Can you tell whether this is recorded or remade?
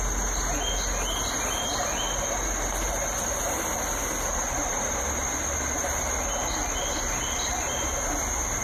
recorded